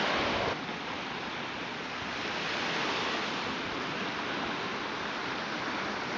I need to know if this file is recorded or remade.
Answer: recorded